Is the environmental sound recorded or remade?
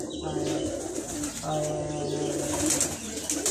recorded